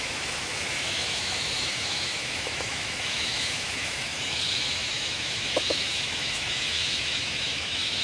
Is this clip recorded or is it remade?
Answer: remade